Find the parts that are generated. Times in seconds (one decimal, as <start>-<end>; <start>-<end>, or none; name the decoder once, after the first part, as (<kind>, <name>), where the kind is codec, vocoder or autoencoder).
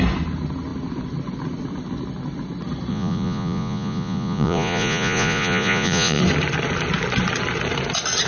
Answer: 2.9-6.2 (vocoder, Vocos)